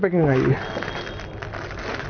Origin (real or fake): real